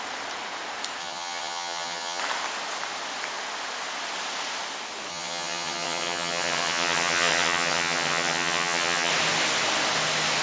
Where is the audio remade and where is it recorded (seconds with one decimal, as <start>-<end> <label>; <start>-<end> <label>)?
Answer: 0.0-1.0 recorded; 1.0-2.2 remade; 2.2-5.1 recorded; 5.1-9.1 remade; 9.1-10.4 recorded